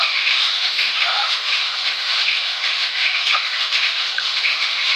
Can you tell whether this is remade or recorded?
remade